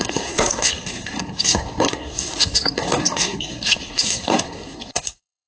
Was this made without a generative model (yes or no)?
no